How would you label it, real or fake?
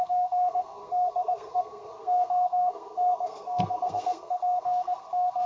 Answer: fake